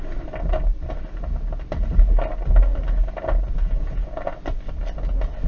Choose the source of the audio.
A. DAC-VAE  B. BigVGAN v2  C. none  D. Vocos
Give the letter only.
C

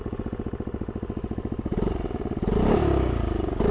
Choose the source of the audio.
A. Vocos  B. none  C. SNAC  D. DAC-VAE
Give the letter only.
B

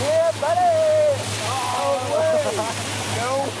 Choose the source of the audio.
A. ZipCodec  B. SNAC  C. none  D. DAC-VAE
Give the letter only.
C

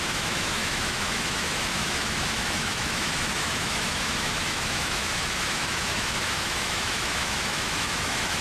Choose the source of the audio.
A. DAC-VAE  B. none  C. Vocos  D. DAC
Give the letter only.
A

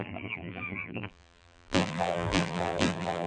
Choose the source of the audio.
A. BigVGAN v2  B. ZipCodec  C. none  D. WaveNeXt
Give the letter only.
A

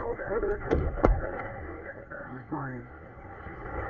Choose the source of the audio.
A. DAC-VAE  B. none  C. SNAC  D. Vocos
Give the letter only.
C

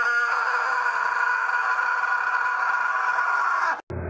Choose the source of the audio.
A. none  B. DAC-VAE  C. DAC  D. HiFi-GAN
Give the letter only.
A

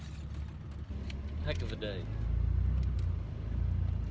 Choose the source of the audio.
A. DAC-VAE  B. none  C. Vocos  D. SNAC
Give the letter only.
B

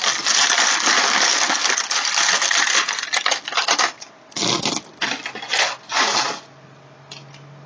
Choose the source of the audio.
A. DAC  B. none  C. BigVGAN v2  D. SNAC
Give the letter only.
B